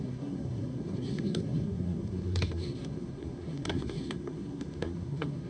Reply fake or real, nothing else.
fake